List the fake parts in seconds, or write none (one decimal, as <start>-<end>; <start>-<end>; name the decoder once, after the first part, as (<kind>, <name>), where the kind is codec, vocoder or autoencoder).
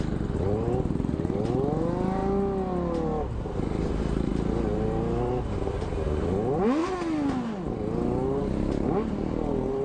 none